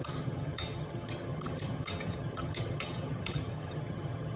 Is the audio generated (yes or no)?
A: yes